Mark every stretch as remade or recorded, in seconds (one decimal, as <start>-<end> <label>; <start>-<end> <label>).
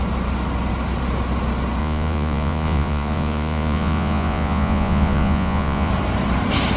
0.0-1.8 recorded; 1.8-5.9 remade; 5.9-6.8 recorded